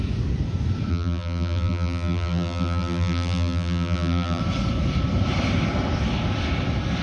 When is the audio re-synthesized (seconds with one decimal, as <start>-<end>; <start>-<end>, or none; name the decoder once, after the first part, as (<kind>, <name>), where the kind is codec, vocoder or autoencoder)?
0.9-4.4 (vocoder, BigVGAN v2)